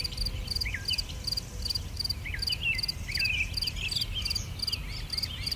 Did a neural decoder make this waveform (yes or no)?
no